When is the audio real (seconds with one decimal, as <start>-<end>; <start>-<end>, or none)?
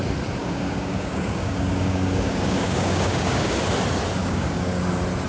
0.0-0.4; 3.6-4.2; 4.8-5.3